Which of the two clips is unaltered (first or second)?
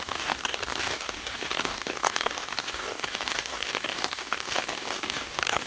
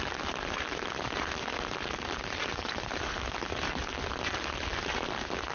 second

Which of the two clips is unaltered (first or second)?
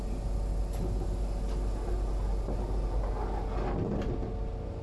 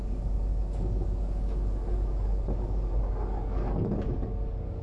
first